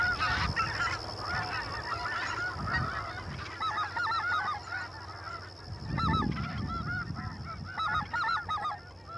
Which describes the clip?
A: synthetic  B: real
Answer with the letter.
B